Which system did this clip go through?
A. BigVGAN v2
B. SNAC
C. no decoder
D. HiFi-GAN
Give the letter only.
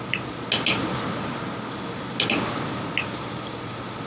C